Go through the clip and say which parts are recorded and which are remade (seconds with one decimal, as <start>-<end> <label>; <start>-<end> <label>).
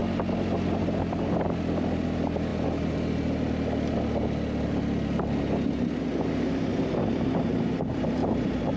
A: 0.0-6.7 recorded; 6.7-7.7 remade; 7.7-8.2 recorded; 8.2-8.8 remade